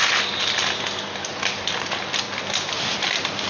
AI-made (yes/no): no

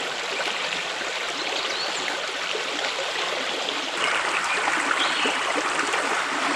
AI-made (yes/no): no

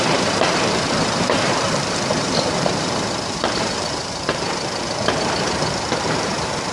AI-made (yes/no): yes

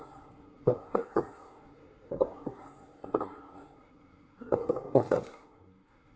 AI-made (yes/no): yes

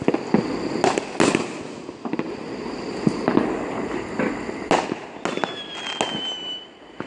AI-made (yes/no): no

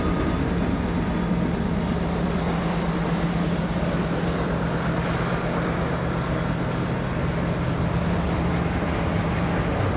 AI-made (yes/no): no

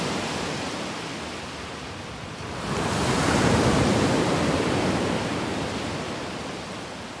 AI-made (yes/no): yes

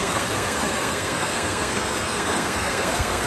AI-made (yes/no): yes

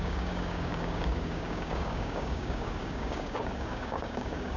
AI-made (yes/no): yes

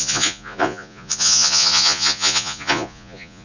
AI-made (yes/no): yes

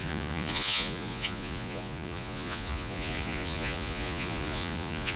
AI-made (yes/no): yes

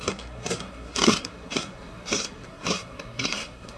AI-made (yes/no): yes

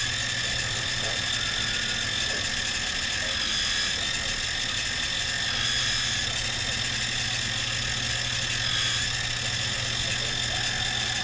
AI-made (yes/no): no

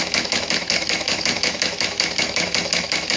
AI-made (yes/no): yes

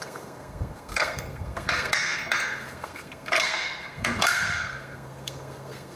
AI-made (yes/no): yes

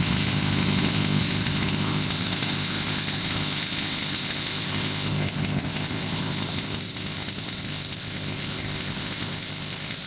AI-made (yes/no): yes